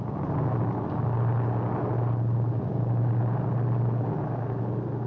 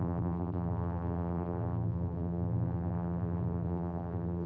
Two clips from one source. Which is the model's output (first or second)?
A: second